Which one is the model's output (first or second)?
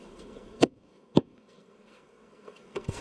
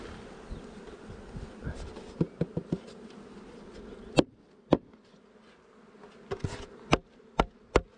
first